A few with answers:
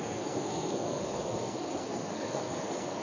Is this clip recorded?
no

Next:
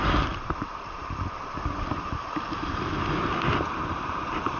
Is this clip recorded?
yes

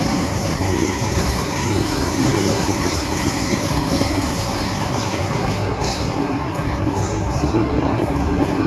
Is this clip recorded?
no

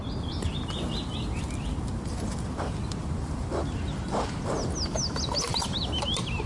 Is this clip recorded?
yes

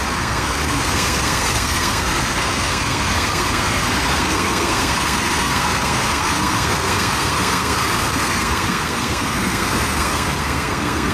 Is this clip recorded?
no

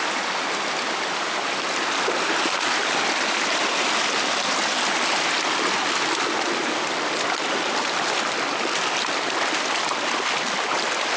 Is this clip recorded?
yes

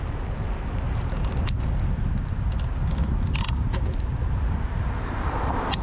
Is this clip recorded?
yes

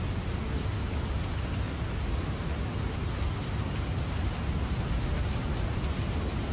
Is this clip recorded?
yes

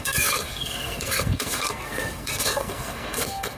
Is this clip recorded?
no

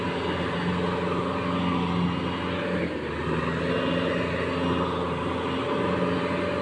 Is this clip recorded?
yes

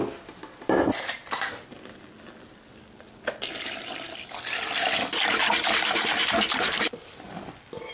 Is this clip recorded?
yes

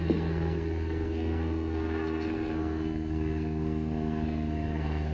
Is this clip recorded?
no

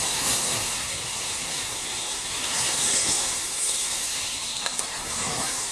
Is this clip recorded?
no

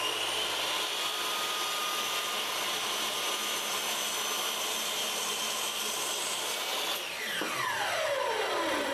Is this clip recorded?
yes